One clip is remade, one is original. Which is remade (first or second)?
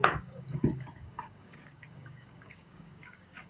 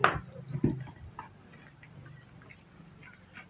first